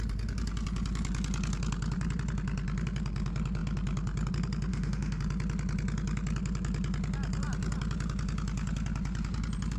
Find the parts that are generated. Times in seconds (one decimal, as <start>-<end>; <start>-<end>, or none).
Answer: 4.7-5.2